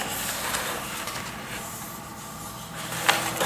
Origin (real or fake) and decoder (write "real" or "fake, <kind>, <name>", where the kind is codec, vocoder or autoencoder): real